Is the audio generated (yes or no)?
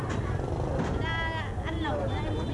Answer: no